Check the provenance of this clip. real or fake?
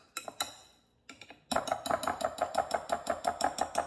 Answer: real